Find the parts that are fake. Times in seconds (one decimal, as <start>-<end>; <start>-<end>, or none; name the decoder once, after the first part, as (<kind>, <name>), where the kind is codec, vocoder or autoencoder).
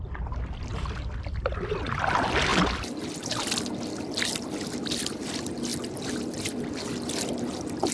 0.7-1.6 (vocoder, BigVGAN v2)